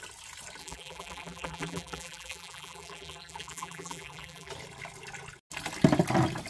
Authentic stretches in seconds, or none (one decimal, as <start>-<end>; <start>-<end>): 0.0-0.6; 4.5-6.5